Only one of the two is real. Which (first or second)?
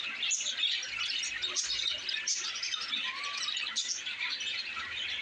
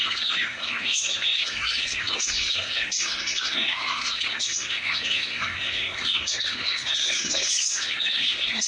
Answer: first